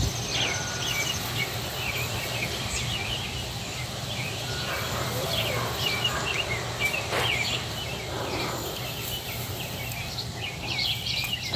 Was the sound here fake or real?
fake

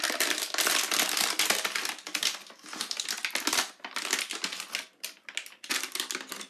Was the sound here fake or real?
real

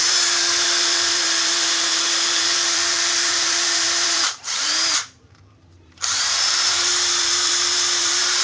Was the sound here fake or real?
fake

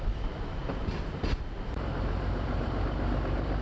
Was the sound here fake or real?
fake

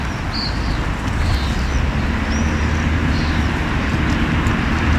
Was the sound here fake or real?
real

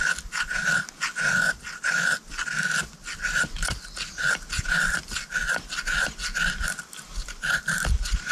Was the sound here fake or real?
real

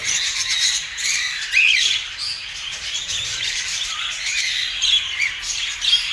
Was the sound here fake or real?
fake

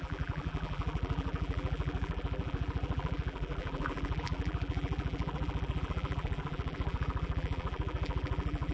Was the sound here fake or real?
fake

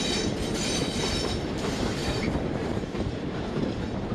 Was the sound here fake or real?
fake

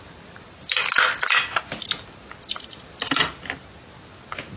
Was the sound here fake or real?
real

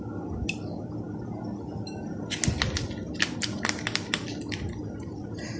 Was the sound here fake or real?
real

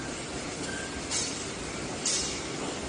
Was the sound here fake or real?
fake